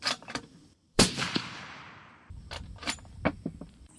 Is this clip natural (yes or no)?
no